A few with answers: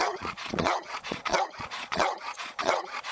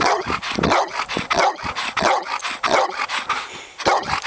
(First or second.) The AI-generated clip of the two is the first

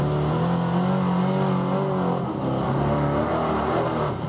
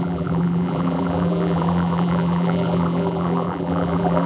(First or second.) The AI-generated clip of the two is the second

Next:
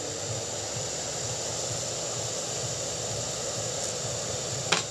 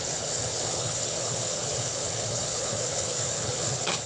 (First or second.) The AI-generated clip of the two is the second